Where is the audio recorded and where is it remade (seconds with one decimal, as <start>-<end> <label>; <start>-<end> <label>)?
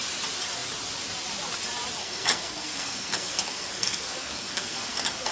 0.0-2.0 recorded; 2.0-5.3 remade